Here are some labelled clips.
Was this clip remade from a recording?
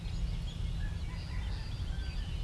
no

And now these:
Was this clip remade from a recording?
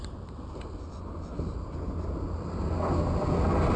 no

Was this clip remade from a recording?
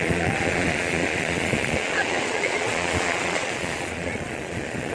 yes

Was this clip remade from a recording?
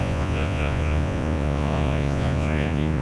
yes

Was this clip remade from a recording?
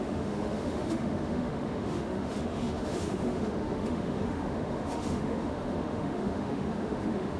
yes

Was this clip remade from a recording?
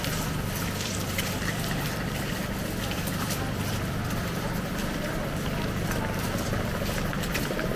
yes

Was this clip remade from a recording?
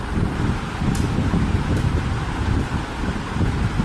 no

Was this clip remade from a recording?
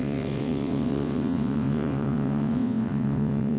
yes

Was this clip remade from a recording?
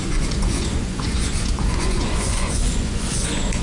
yes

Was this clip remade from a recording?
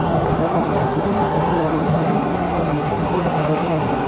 yes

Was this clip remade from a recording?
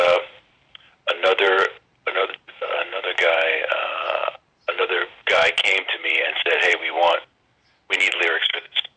yes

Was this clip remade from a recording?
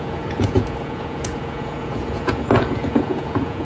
yes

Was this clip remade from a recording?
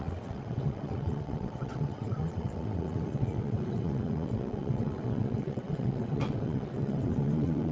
yes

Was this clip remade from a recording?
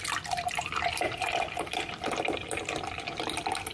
yes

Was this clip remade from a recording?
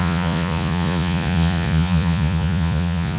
yes